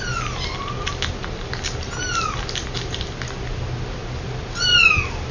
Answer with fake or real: real